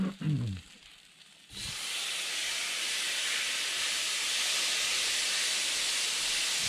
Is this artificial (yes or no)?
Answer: no